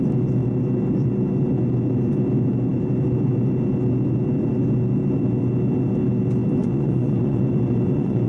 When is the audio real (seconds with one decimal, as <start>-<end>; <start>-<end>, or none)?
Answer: 0.0-6.6